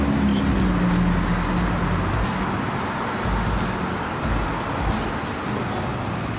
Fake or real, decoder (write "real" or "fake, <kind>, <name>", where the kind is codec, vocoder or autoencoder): real